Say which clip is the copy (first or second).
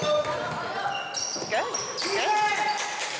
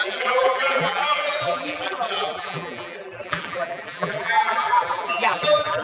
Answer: second